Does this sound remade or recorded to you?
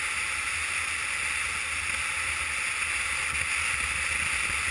recorded